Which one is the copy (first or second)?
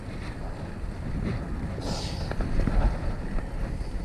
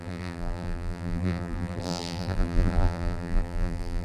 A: second